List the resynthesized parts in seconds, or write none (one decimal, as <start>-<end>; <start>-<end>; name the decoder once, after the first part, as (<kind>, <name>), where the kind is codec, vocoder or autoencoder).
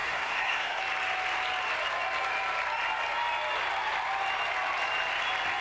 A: 0.0-0.8 (codec, SNAC)